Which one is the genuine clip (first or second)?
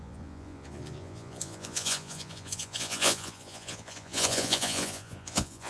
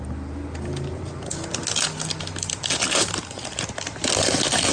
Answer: second